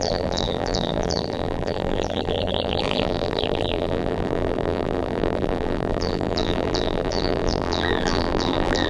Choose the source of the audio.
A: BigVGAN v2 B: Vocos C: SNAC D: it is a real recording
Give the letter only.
A